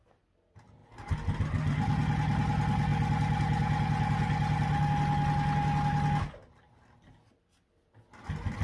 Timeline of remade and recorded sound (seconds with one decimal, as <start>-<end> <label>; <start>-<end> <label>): 0.0-8.6 recorded